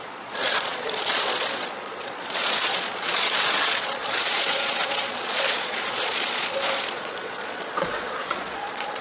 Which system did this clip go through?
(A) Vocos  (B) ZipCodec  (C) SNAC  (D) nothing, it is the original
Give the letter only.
A